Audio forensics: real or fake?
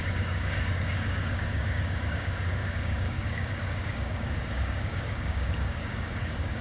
fake